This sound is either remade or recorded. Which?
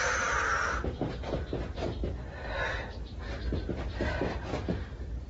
recorded